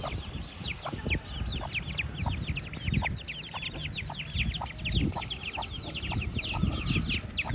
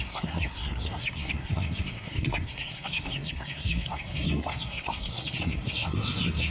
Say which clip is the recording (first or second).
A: first